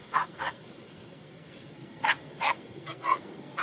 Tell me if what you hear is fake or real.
fake